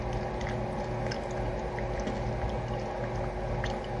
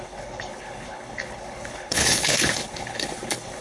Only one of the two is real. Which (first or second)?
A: first